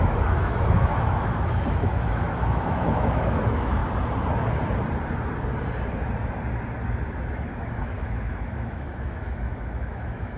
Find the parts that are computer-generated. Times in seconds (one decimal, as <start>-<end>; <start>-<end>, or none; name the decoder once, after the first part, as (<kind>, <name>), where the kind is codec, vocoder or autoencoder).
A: 0.0-3.8 (autoencoder, DAC-VAE); 7.3-10.4